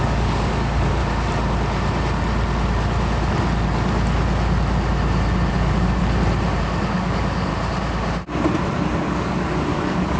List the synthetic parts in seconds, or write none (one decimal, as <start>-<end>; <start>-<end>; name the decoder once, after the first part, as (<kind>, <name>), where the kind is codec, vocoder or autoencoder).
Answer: 0.0-1.0 (codec, DAC); 5.5-6.0; 6.6-7.5; 9.1-10.2